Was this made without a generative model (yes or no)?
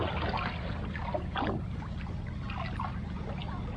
yes